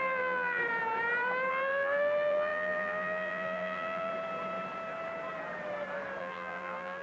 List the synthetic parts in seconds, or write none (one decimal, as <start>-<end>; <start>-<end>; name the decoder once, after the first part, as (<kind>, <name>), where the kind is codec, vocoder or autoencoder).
0.0-0.6 (vocoder, BigVGAN v2); 1.5-4.1; 6.2-7.0